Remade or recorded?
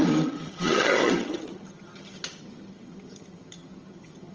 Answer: remade